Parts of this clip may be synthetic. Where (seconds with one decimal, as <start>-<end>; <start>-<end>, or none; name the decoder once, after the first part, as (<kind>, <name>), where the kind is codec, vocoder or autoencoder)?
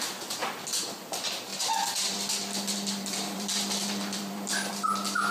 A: 1.5-4.7 (vocoder, BigVGAN v2)